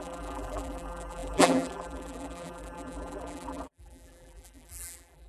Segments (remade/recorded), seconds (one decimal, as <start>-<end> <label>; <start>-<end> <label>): 0.0-5.3 remade